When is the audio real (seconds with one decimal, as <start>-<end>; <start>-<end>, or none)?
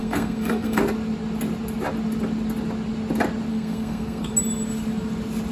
0.8-3.5; 4.3-5.5